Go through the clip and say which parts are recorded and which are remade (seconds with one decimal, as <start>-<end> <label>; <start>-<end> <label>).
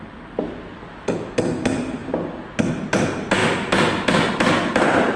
0.0-5.2 recorded